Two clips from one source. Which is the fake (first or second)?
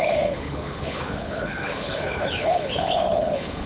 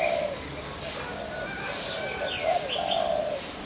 first